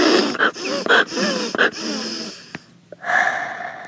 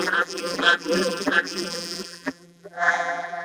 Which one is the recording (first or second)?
first